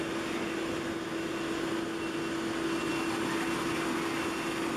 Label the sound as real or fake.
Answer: real